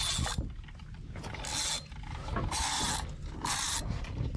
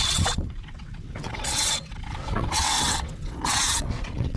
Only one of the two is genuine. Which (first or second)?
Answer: first